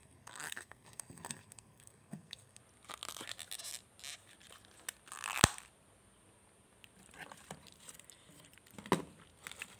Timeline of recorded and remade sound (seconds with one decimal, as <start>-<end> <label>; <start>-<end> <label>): 0.0-2.6 remade; 2.6-9.8 recorded

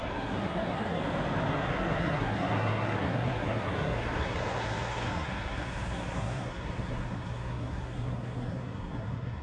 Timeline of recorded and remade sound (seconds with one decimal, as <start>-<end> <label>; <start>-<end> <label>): 0.0-1.0 remade; 1.0-1.5 recorded; 1.5-9.4 remade

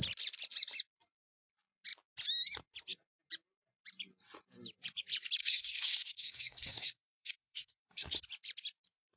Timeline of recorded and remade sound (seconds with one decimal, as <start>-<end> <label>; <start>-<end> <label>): 0.0-5.4 recorded; 5.4-8.2 remade; 8.2-9.2 recorded

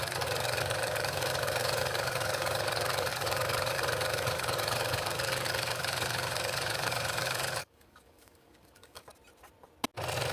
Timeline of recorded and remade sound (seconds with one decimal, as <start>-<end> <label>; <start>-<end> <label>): 0.0-9.1 remade; 9.1-10.3 recorded